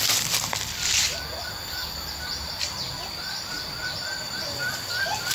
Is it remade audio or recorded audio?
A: remade